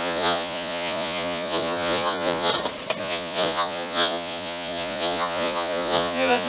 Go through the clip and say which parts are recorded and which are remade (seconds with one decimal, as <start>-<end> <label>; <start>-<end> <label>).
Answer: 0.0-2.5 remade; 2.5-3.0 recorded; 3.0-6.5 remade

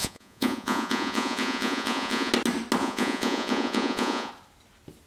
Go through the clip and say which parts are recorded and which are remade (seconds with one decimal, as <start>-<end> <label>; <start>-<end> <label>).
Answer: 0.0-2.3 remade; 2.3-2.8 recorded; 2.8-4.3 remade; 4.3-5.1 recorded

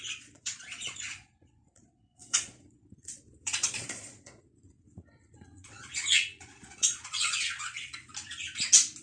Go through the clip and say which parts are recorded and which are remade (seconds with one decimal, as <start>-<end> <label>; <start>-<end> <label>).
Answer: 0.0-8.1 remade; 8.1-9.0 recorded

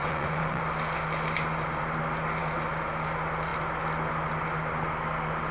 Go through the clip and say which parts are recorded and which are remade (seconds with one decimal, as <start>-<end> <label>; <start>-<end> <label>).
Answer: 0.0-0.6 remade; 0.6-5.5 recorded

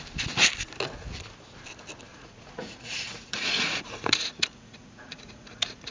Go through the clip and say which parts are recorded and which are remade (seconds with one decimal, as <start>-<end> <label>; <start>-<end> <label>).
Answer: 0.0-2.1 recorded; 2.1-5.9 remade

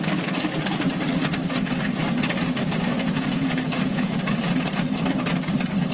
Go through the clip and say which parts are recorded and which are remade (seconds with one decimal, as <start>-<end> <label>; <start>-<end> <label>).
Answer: 0.0-2.9 recorded; 2.9-4.2 remade; 4.2-5.9 recorded

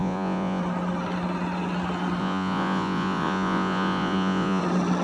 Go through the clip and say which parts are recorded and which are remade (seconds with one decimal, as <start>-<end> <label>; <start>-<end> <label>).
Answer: 0.0-0.6 remade; 0.6-2.2 recorded; 2.2-4.6 remade; 4.6-5.0 recorded